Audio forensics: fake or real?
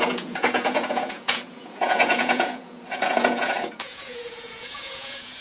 fake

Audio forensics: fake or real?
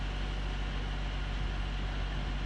real